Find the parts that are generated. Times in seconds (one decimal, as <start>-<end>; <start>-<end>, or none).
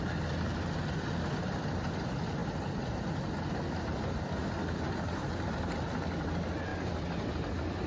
none